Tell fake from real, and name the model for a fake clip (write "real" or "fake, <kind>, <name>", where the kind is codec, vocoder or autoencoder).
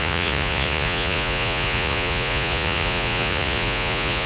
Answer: fake, vocoder, Vocos